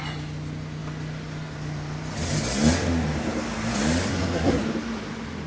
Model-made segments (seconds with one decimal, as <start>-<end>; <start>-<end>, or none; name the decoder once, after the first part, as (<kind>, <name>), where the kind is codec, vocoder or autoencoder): 4.1-4.6 (codec, SNAC)